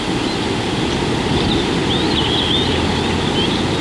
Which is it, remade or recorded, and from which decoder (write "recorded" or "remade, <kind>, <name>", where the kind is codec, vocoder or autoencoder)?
recorded